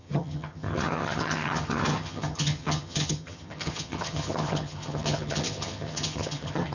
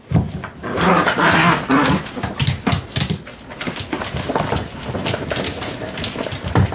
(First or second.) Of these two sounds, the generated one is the first